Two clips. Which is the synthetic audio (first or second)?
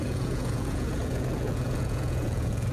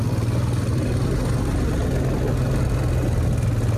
first